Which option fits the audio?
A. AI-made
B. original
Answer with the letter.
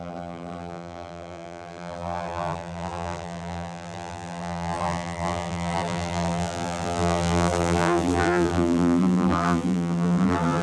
A